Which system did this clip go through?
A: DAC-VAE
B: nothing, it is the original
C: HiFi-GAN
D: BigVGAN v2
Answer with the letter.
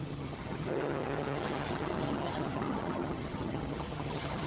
C